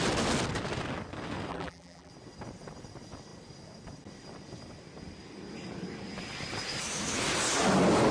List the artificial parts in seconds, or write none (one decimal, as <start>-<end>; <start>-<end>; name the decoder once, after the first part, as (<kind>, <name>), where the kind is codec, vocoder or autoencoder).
1.5-2.1 (vocoder, BigVGAN v2)